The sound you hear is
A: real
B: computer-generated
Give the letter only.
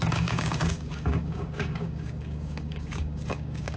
B